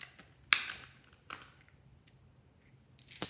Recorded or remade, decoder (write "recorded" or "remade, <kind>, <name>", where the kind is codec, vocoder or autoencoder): recorded